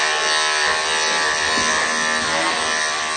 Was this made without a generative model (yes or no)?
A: yes